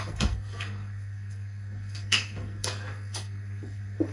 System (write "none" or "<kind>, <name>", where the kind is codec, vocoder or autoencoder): codec, SNAC